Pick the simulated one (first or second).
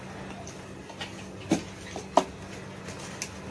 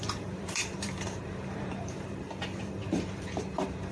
second